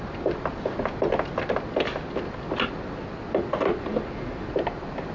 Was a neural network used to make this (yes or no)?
no